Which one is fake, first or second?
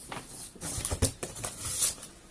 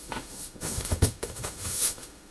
second